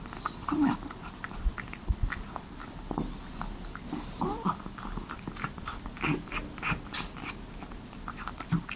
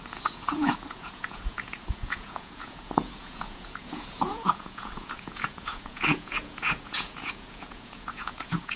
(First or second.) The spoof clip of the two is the second